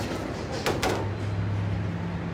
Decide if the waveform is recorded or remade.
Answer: recorded